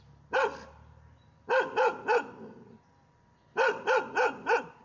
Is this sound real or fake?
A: real